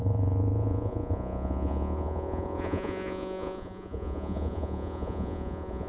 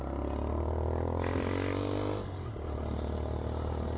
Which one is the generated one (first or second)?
first